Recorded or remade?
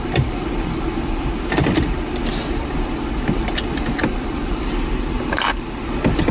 recorded